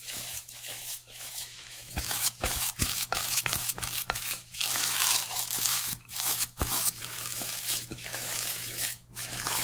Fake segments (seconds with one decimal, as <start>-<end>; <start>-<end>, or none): 0.0-9.6